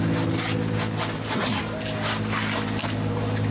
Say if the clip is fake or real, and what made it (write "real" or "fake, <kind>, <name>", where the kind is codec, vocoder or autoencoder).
real